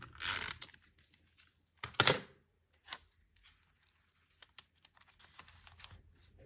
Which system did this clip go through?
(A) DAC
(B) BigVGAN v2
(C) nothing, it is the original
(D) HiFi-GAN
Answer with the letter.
C